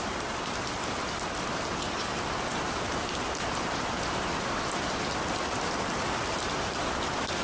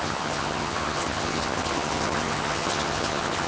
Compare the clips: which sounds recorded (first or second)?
first